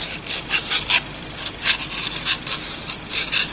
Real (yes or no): yes